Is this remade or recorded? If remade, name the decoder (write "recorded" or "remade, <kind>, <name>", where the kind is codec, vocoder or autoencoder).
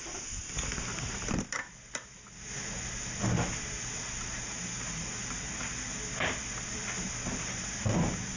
recorded